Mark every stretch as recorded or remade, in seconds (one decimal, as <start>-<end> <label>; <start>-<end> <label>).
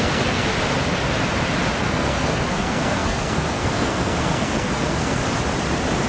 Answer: 0.0-0.5 remade; 0.5-1.8 recorded; 1.8-5.2 remade; 5.2-6.1 recorded